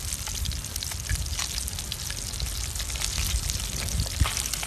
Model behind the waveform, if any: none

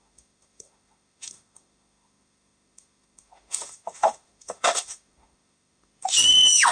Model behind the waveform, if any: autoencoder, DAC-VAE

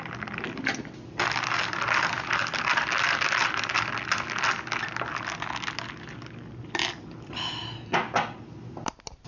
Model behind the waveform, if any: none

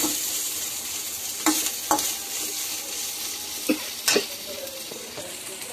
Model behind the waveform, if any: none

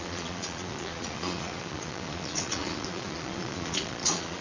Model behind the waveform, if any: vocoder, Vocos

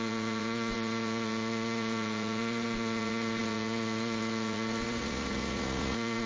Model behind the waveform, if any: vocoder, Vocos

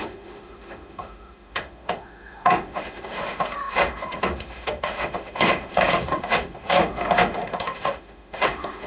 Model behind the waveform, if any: autoencoder, DAC-VAE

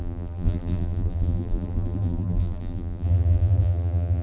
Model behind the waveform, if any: vocoder, BigVGAN v2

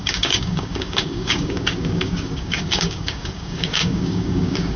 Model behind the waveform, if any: codec, DAC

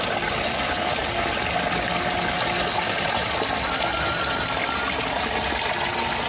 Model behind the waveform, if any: none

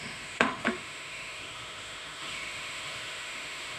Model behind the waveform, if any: autoencoder, DAC-VAE